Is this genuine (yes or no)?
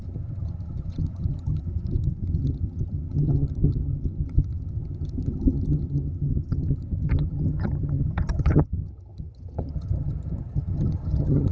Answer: no